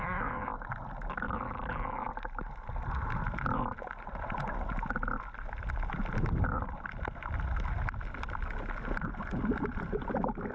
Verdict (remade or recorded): recorded